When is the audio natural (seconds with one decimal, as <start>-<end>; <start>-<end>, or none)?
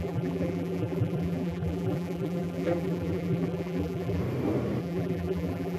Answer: 4.2-4.8